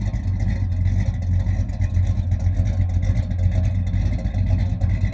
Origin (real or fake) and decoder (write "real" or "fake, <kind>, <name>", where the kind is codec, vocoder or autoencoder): real